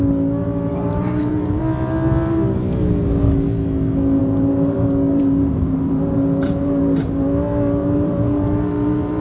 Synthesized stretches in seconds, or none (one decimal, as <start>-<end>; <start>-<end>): 0.4-1.6; 4.2-6.8; 7.8-9.2